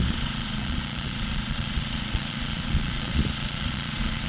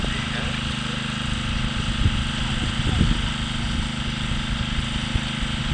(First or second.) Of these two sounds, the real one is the second